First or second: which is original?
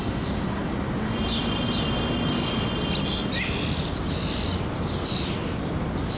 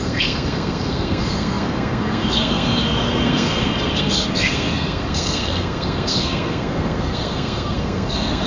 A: first